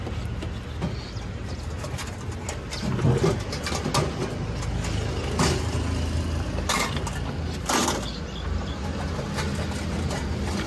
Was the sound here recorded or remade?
recorded